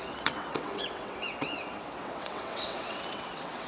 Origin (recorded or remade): remade